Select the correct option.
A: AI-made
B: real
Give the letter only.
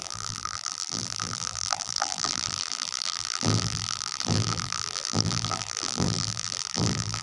A